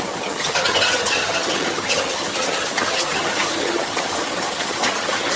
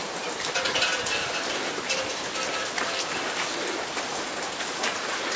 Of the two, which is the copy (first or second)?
first